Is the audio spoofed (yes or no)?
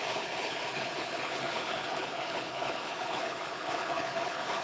yes